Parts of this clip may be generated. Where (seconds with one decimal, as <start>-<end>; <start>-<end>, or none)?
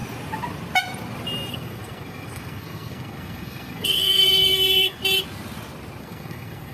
1.5-5.0; 6.0-6.7